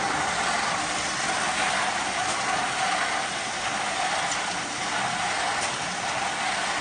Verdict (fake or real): real